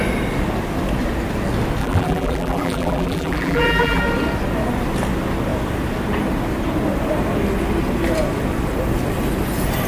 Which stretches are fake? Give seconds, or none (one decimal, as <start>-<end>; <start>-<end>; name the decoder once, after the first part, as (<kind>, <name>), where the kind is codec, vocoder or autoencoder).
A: 1.8-4.0 (vocoder, BigVGAN v2)